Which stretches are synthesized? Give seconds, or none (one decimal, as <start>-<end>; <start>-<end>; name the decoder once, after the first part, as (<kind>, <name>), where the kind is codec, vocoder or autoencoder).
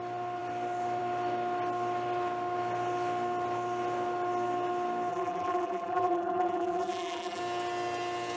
5.1-7.4 (vocoder, BigVGAN v2)